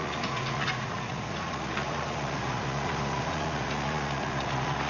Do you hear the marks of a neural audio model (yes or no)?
yes